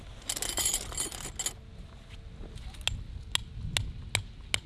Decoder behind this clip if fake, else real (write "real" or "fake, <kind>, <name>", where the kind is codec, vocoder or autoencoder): real